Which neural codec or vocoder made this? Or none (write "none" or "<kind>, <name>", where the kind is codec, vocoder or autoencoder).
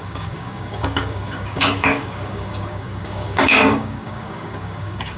codec, DAC